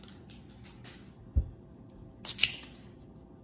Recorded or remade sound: recorded